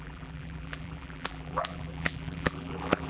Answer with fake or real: fake